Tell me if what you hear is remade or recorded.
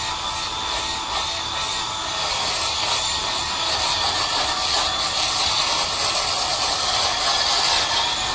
recorded